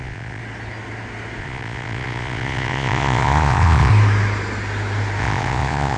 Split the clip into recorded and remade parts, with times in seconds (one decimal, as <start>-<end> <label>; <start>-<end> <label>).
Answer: 0.0-0.4 remade; 0.4-1.4 recorded; 1.4-3.9 remade; 3.9-5.2 recorded; 5.2-6.0 remade